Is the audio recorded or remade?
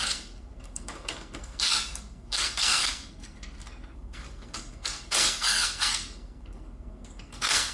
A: remade